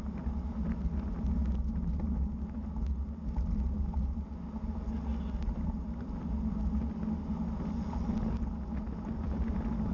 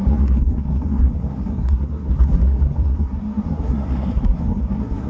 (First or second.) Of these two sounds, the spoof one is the second